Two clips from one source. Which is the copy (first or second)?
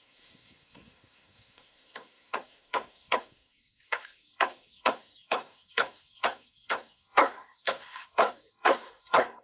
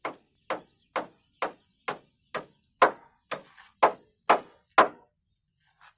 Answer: first